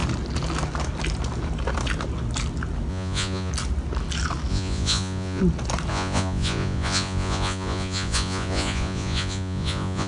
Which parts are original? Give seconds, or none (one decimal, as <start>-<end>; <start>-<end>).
0.0-2.9; 3.5-4.5; 5.4-5.9